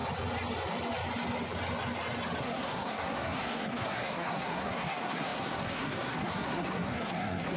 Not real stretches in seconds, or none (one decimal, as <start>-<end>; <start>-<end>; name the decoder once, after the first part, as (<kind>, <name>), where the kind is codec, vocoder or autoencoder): 2.4-7.6 (codec, SNAC)